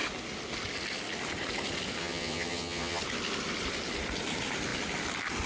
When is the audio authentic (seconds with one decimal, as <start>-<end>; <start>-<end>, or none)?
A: 0.0-2.0; 3.0-5.5